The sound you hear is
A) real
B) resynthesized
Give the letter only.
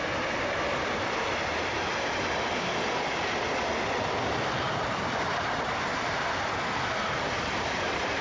B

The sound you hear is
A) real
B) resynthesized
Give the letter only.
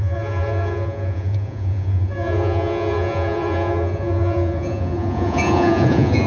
B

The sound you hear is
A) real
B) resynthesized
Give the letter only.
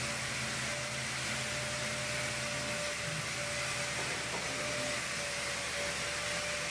A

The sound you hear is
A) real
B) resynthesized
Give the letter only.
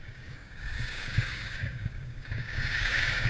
B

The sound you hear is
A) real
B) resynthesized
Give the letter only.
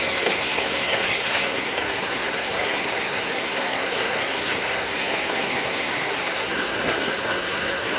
B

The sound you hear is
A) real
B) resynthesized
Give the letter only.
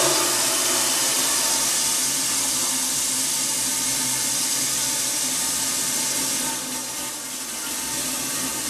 A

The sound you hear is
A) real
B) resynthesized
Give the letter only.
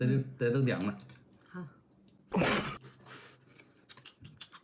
A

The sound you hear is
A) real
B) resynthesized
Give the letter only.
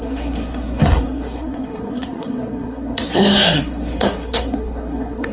B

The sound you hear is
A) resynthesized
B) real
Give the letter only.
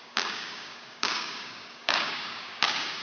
A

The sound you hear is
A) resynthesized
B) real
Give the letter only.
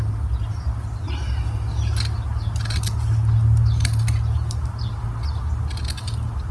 B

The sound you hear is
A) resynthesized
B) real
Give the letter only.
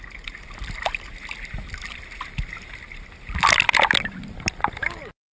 B